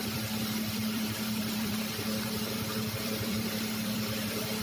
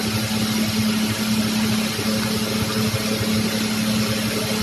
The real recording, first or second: second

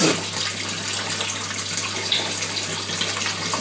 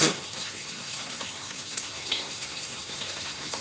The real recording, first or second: first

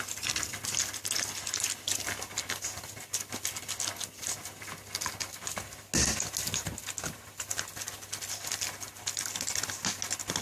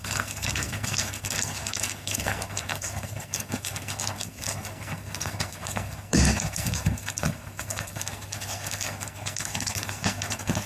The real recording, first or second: first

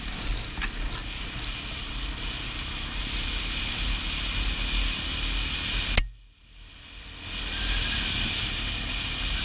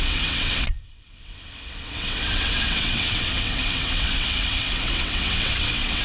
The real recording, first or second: first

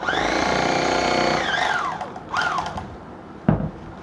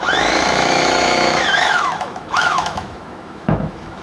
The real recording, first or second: first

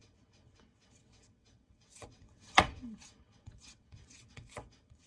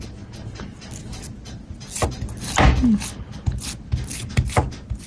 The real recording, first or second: second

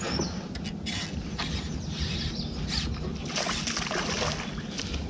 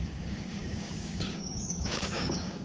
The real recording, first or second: first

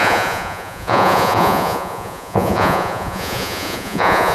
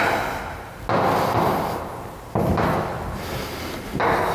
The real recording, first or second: second